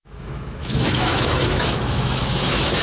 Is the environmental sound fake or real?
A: fake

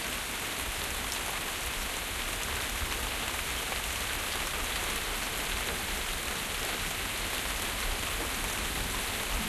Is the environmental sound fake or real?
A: real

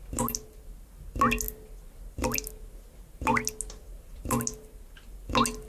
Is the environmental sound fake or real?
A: real